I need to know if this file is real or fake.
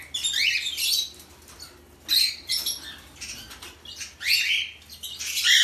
real